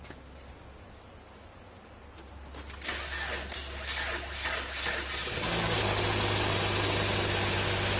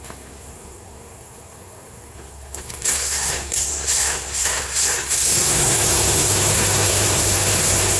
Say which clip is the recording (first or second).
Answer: first